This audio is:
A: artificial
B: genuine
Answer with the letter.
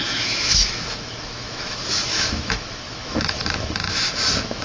A